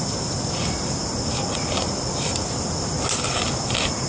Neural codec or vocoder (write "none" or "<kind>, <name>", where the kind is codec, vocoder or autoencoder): none